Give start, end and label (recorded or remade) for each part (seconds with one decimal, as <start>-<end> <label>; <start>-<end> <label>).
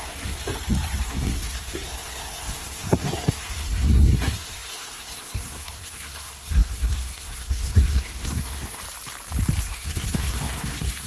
0.0-0.4 remade; 0.4-1.0 recorded; 1.0-8.8 remade; 8.8-9.6 recorded; 9.6-11.1 remade